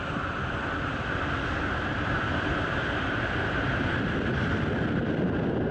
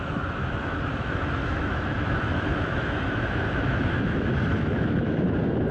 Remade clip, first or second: second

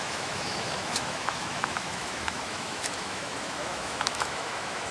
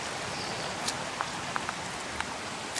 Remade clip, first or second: first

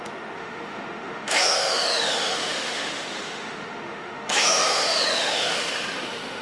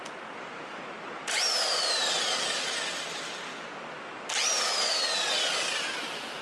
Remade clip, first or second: first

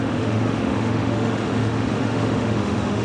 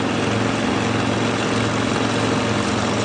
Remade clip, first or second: first